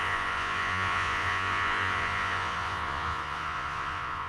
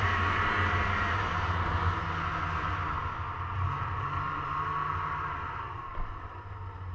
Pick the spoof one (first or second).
first